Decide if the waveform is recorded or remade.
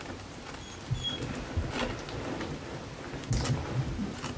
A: recorded